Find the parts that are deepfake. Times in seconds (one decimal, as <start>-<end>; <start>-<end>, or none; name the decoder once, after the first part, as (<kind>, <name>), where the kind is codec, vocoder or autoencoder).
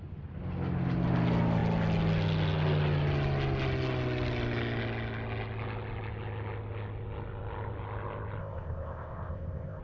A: 8.4-9.8 (codec, ZipCodec)